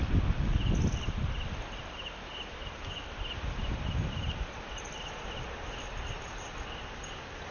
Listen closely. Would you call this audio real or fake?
real